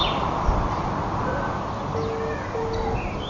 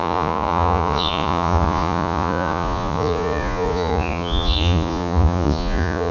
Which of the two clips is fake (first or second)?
second